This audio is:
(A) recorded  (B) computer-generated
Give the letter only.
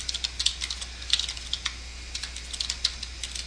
A